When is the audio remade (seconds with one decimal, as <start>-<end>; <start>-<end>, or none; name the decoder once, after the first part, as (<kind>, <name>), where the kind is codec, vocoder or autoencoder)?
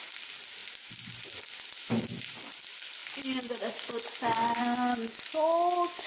none